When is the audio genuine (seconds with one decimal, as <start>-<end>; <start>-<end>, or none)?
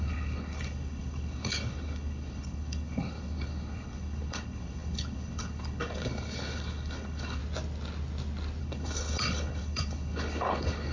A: 7.4-8.6